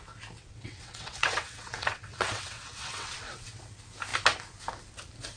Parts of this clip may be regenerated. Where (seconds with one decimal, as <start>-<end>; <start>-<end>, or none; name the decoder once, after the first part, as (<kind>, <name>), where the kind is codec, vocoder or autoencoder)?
0.4-3.6 (vocoder, WaveNeXt)